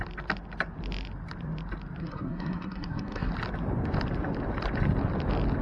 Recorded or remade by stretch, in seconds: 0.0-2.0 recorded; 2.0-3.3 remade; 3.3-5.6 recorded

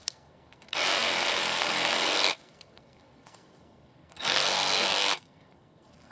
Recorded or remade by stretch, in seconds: 0.0-6.1 remade